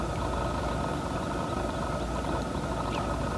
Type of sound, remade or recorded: recorded